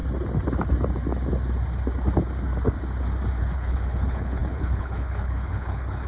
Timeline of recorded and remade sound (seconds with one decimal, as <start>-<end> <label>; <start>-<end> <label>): 0.0-3.4 recorded; 3.4-6.1 remade